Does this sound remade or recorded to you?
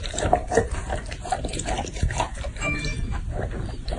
remade